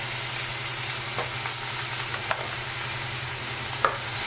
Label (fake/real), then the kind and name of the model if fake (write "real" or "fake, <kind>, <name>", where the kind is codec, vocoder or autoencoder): real